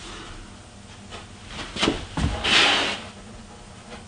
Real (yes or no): yes